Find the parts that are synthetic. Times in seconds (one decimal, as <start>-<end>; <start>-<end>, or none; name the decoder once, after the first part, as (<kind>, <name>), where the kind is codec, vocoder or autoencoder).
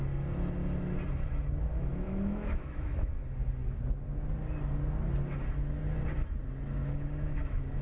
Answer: 1.7-3.1 (autoencoder, DAC-VAE); 6.8-7.8